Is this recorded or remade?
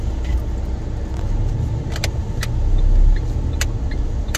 recorded